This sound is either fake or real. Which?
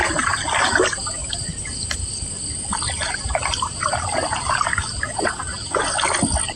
real